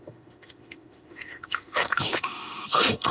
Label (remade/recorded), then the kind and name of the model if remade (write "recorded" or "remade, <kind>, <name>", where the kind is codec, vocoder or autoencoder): remade, autoencoder, DAC-VAE